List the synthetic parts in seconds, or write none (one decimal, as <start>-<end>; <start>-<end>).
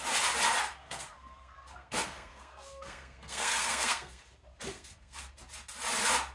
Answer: 0.8-4.2; 4.7-5.2